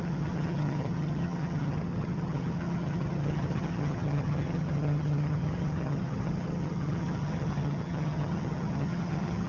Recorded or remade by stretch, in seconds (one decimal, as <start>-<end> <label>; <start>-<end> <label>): 0.0-9.5 remade